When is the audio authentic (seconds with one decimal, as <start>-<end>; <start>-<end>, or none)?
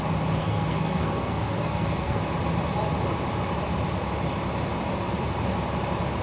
0.0-0.4; 2.2-6.2